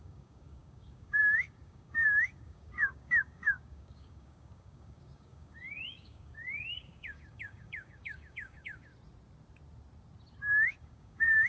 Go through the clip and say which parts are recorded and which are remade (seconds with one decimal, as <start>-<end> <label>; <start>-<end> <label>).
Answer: 0.0-8.9 remade; 8.9-10.8 recorded; 10.8-11.5 remade